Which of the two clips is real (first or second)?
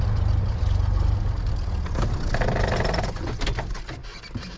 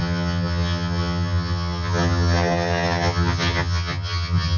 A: first